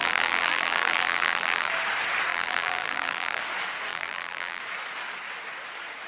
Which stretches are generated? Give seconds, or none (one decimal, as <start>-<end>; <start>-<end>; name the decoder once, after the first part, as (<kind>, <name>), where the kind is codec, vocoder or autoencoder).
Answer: 0.0-1.7 (vocoder, BigVGAN v2); 2.3-3.4; 3.9-4.6